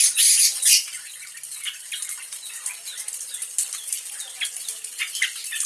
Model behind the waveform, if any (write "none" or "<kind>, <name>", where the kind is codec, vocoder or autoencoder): none